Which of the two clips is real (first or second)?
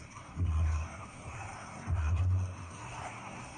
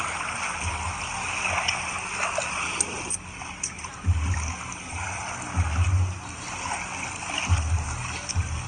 second